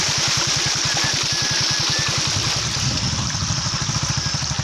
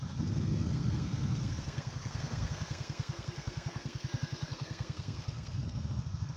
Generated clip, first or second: second